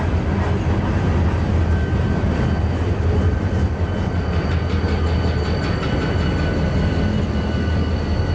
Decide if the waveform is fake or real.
real